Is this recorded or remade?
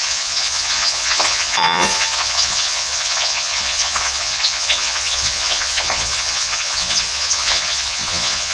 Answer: remade